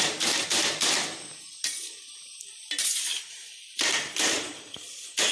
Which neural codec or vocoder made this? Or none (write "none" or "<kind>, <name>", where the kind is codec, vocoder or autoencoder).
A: vocoder, BigVGAN v2